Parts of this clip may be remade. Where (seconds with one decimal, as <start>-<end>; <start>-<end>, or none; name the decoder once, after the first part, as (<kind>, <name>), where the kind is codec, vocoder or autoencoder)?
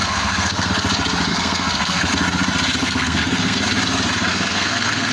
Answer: 0.0-0.7 (codec, SNAC); 1.3-2.1; 2.8-3.6; 4.3-5.1